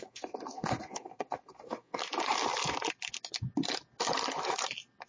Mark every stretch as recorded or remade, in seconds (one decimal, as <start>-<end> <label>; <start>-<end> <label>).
0.0-2.0 remade; 2.0-5.1 recorded